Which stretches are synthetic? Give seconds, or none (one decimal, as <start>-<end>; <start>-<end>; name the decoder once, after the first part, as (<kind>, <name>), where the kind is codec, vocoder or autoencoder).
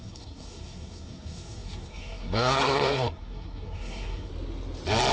0.0-4.3 (codec, SNAC)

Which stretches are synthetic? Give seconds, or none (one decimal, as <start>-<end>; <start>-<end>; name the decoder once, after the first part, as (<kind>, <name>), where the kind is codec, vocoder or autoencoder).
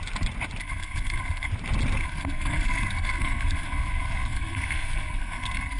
0.6-1.5 (codec, SNAC); 2.0-5.8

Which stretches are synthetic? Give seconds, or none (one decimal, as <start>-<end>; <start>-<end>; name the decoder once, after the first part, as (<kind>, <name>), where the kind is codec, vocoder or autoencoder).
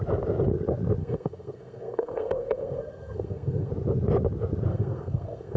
1.0-3.7 (codec, SNAC); 4.7-5.6